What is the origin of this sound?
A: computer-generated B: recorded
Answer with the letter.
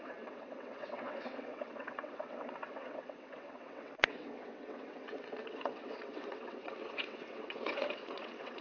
A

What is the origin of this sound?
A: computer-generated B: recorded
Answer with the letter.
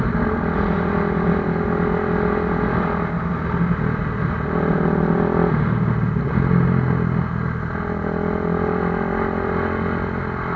B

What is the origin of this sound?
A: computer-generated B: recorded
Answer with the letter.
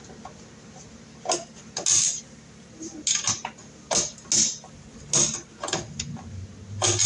B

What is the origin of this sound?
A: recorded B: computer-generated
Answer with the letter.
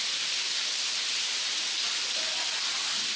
A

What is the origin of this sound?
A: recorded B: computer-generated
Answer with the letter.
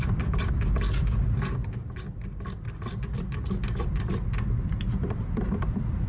B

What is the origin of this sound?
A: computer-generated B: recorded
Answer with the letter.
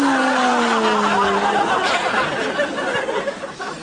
B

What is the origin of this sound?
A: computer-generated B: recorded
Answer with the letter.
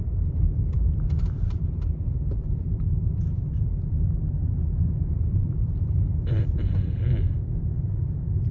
A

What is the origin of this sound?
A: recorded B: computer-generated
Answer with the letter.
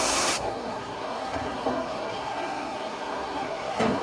B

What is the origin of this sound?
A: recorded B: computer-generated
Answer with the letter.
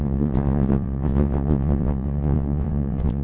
B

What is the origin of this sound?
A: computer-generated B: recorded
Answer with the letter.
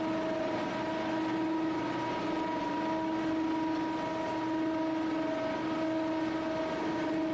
B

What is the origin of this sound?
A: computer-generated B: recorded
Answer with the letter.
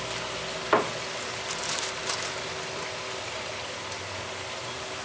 B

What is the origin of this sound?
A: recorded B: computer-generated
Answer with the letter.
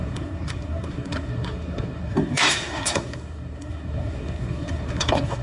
B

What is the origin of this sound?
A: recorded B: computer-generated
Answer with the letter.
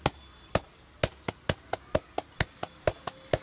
A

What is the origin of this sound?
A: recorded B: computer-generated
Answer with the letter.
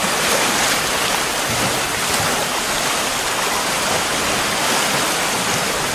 A